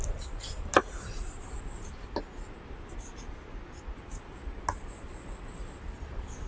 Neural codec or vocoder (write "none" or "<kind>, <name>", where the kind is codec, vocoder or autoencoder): none